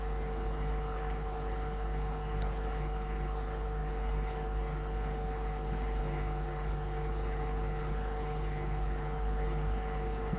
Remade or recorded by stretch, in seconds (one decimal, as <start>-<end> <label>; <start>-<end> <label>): 0.0-10.4 remade